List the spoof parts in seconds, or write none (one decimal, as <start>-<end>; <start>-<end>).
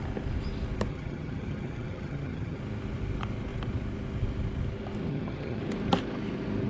0.9-2.6; 5.1-5.6